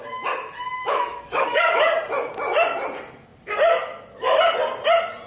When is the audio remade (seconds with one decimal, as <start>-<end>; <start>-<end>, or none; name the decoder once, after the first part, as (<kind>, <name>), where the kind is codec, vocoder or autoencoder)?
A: 0.8-1.8 (codec, DAC)